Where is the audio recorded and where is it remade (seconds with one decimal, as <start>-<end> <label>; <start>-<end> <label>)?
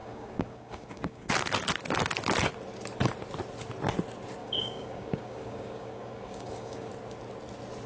0.0-1.3 remade; 1.3-4.4 recorded; 4.4-6.9 remade; 6.9-7.9 recorded